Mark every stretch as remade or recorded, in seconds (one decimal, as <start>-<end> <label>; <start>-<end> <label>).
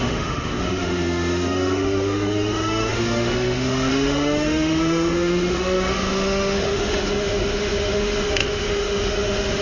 0.0-9.6 remade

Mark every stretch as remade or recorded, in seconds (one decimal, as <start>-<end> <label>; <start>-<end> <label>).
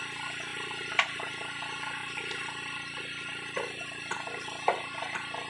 0.0-0.5 recorded; 0.5-1.3 remade; 1.3-2.0 recorded; 2.0-5.0 remade; 5.0-5.5 recorded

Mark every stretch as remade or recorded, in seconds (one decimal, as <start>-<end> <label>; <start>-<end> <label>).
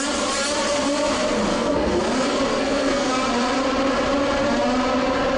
0.0-1.5 recorded; 1.5-2.0 remade; 2.0-2.5 recorded; 2.5-3.1 remade; 3.1-5.4 recorded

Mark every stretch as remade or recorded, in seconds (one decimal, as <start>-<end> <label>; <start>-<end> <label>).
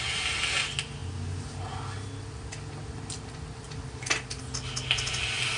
0.0-5.6 recorded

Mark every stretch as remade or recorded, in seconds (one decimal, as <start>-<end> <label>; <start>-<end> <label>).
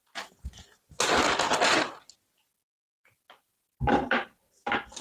0.0-5.0 recorded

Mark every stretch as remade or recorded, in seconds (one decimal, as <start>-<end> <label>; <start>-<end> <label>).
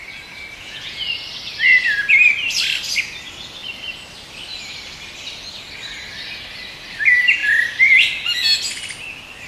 0.0-0.6 recorded; 0.6-1.1 remade; 1.1-9.5 recorded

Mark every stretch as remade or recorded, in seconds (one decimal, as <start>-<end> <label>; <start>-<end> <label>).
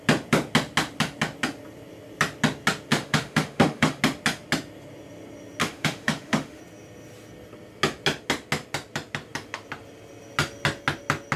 0.0-2.9 recorded; 2.9-4.0 remade; 4.0-5.6 recorded; 5.6-6.6 remade; 6.6-11.4 recorded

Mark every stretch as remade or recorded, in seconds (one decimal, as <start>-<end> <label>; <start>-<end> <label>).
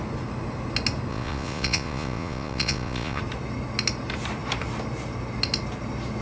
0.0-1.1 recorded; 1.1-3.2 remade; 3.2-6.2 recorded